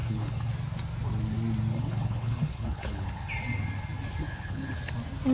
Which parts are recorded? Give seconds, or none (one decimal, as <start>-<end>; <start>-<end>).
0.5-1.7; 3.3-4.2; 4.8-5.3